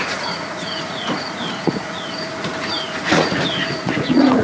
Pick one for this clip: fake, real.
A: fake